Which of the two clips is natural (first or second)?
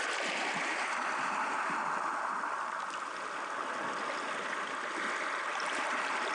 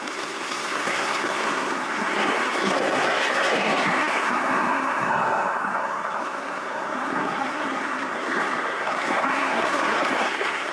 first